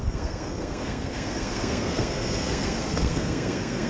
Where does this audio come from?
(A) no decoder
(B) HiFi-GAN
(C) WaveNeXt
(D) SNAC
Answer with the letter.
D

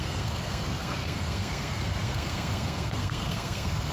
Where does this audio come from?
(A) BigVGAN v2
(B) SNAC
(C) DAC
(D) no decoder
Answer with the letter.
B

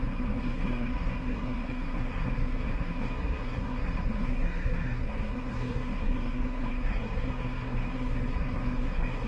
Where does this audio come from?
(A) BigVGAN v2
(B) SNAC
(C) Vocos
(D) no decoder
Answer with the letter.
B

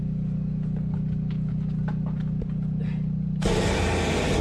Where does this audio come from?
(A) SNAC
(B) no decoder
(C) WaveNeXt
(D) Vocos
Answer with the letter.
B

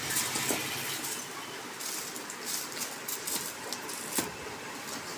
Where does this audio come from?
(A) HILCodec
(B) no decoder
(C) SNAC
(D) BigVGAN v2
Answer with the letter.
B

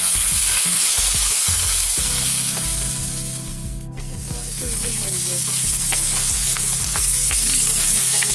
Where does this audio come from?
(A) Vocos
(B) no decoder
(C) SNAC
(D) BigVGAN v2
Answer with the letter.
C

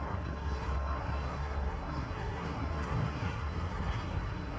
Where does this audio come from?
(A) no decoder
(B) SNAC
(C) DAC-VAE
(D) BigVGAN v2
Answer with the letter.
B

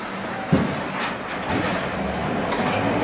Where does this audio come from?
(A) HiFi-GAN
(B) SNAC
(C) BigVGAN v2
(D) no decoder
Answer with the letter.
D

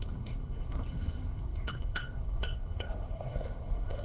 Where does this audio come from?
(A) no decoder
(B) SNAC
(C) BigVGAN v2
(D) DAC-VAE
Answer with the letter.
B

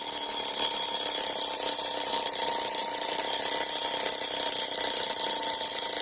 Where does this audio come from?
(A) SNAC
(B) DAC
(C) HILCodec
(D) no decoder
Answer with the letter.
D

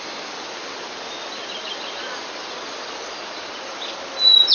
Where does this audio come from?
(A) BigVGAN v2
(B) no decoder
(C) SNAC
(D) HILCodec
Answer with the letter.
B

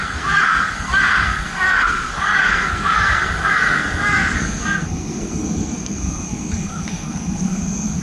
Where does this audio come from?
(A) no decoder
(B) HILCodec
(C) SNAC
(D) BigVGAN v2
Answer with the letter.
C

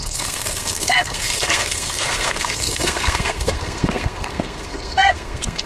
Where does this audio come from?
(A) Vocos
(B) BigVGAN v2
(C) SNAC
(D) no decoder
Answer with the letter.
C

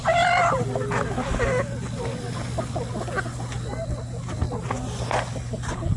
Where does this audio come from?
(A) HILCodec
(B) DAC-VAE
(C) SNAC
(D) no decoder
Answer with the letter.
D